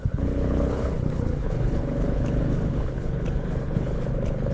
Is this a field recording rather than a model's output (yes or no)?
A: no